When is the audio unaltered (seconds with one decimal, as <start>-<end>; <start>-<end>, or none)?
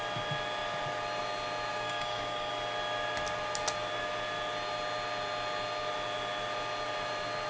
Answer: 0.0-1.7; 2.5-7.5